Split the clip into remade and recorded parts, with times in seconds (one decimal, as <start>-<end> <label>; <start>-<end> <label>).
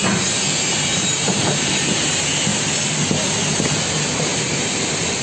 0.0-0.9 recorded; 0.9-2.1 remade; 2.1-2.5 recorded; 2.5-3.0 remade; 3.0-4.3 recorded; 4.3-5.2 remade